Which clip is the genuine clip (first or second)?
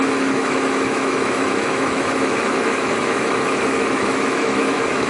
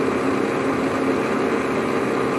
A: second